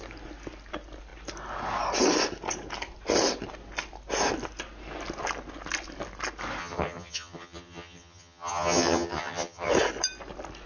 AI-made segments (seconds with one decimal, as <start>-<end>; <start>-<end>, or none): 6.6-9.7